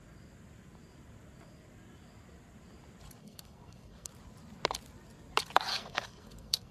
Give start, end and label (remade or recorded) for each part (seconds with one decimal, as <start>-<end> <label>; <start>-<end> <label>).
0.0-3.2 recorded; 3.2-4.1 remade; 4.1-5.7 recorded; 5.7-6.7 remade